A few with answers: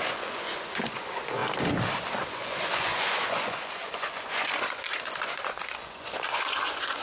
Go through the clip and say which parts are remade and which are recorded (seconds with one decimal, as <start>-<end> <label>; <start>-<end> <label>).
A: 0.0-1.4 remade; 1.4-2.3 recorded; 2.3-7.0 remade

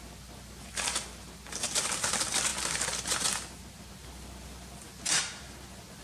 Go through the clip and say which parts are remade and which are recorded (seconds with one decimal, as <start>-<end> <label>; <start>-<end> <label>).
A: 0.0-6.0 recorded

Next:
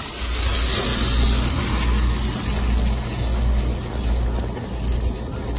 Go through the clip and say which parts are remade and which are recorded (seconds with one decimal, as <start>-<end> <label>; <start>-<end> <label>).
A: 0.0-5.6 recorded

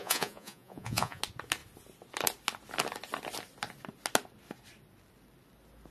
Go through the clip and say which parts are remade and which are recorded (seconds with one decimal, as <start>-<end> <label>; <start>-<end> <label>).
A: 0.0-1.2 remade; 1.2-5.9 recorded

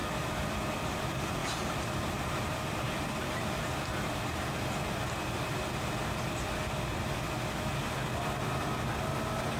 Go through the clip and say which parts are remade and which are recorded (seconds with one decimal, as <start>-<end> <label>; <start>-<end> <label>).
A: 0.0-0.8 recorded; 0.8-4.8 remade; 4.8-9.6 recorded

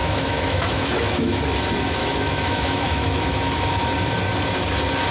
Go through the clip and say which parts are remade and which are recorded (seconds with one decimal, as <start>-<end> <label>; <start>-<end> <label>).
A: 0.0-1.4 remade; 1.4-2.0 recorded; 2.0-3.7 remade; 3.7-5.1 recorded